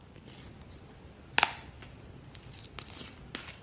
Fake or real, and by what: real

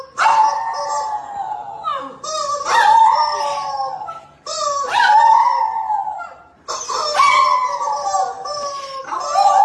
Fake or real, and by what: real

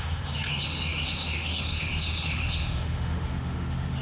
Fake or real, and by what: fake, autoencoder, DAC-VAE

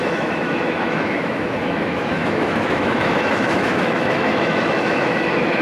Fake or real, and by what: fake, autoencoder, DAC-VAE